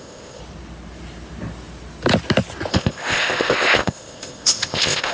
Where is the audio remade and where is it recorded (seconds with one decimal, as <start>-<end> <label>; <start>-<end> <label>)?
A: 0.0-0.4 remade; 0.4-2.7 recorded; 2.7-5.1 remade

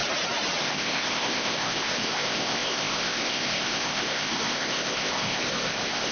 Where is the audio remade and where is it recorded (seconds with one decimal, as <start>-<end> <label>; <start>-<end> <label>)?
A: 0.0-0.6 recorded; 0.6-6.1 remade